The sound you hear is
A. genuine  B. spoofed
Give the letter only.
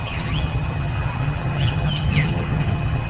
B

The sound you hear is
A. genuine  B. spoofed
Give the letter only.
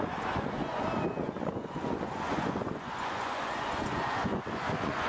B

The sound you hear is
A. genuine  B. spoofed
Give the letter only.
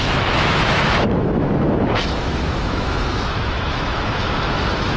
B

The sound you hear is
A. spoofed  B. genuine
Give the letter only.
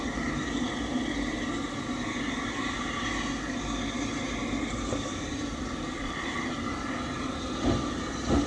A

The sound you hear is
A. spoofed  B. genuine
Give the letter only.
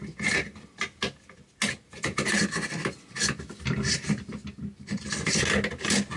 B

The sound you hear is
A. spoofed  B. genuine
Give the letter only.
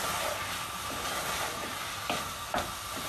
B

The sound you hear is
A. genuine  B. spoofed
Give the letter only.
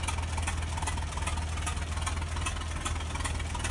A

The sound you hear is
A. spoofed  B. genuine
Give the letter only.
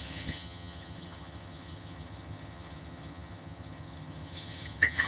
A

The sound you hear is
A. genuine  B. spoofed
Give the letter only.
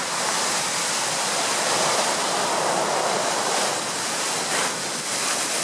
A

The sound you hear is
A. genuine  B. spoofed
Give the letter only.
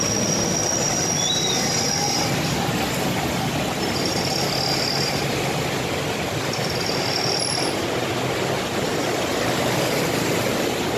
A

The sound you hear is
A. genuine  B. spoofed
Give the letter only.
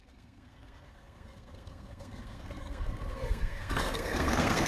B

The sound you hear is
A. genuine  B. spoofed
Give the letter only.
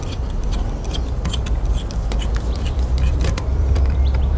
B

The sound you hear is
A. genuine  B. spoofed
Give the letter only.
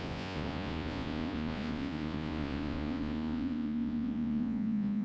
B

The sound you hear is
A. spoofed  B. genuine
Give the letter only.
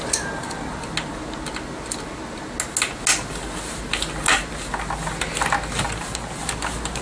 B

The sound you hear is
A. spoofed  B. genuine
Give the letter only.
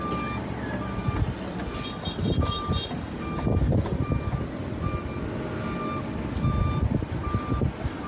B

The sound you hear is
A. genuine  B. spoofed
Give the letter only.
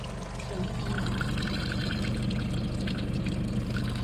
A